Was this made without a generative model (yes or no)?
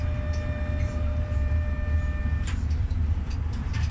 yes